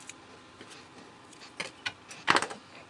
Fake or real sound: real